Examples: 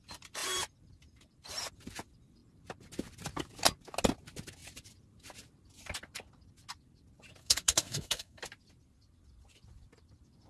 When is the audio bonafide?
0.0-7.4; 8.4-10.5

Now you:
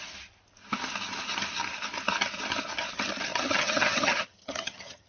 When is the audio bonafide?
0.0-3.3

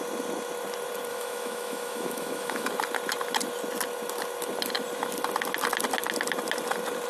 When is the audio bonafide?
0.0-1.1; 2.7-7.1

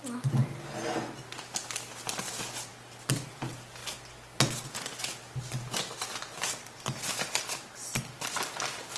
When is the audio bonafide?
0.0-9.0

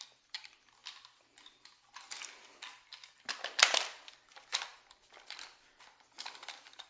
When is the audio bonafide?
0.8-3.4

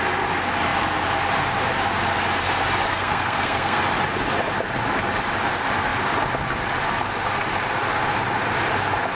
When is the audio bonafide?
0.0-2.9; 3.8-9.2

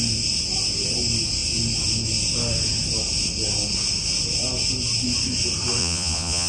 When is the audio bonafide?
0.0-5.8